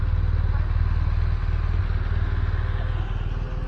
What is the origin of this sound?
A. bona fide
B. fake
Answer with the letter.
A